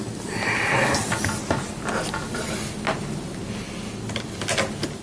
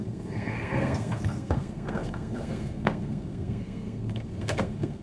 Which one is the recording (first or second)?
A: first